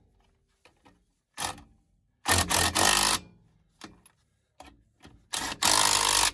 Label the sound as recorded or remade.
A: recorded